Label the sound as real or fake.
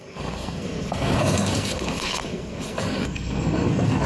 fake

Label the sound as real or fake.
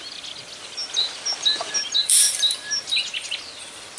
real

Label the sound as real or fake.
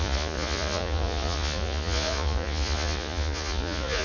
fake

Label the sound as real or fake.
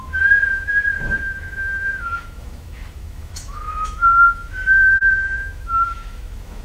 fake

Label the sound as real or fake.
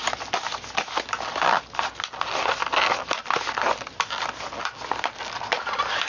real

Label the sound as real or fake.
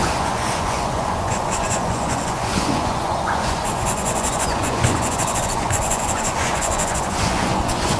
fake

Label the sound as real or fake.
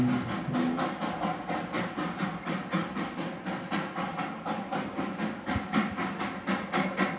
real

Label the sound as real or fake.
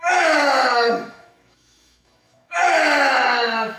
fake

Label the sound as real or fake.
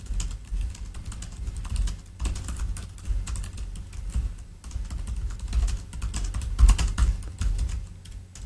real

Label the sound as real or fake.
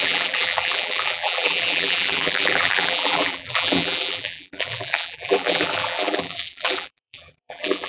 fake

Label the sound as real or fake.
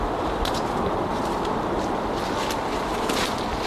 real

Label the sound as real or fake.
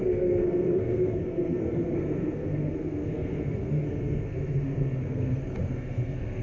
fake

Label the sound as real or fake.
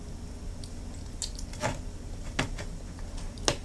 real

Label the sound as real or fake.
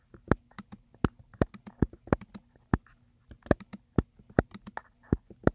real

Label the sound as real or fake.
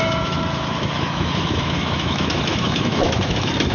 fake